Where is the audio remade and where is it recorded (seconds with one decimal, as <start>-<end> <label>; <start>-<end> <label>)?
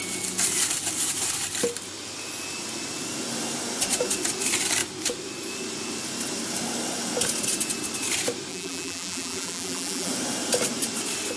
0.0-8.5 recorded; 8.5-10.1 remade; 10.1-11.4 recorded